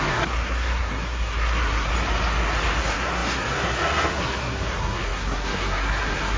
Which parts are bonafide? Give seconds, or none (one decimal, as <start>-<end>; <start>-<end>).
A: 1.9-2.8